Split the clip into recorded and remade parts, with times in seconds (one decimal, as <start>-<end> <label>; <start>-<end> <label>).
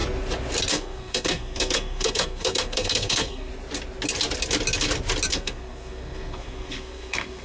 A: 0.0-0.7 recorded; 0.7-3.5 remade; 3.5-5.3 recorded; 5.3-7.4 remade